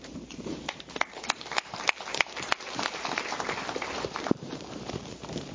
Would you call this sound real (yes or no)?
no